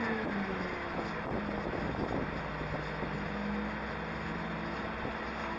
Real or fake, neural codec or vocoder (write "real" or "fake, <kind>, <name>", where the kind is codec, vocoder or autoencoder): real